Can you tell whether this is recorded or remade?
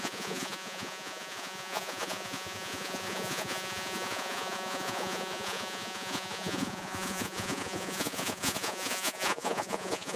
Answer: remade